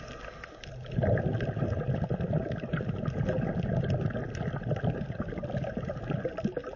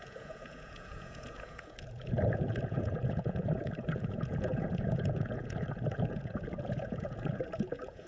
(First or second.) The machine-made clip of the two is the second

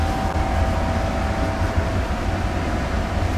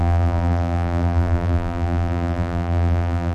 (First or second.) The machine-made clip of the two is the second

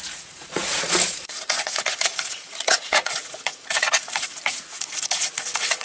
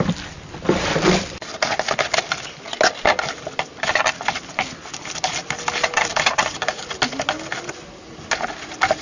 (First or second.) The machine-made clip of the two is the first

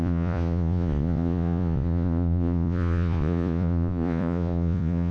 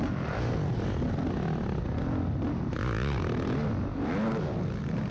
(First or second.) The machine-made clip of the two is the first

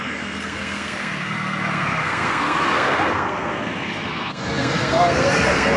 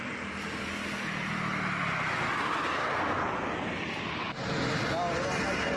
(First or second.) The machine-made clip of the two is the first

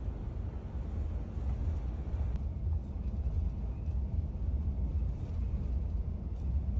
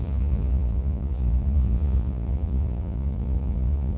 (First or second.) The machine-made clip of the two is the second